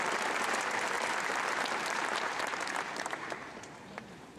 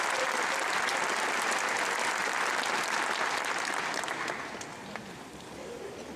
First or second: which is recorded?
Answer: second